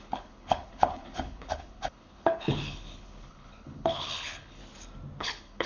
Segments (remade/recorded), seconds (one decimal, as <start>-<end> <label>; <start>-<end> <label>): 0.0-4.6 remade; 4.6-5.2 recorded; 5.2-5.7 remade